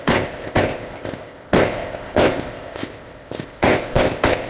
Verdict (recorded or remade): remade